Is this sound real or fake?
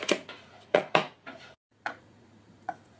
fake